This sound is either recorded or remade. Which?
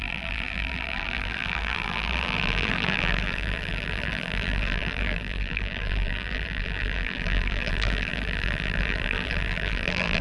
remade